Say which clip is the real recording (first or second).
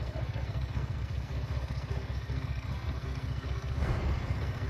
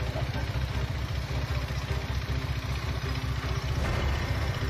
second